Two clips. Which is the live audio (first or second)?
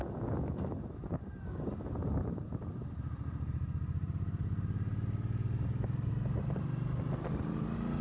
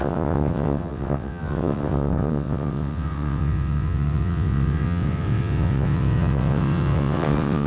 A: first